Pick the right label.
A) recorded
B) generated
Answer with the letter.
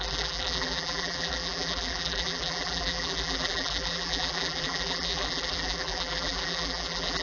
B